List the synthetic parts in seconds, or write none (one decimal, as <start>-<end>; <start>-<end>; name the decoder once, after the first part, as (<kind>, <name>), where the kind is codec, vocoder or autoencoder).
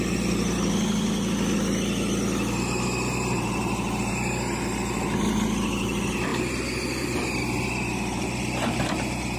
none